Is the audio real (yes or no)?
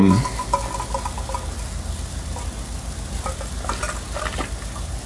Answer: yes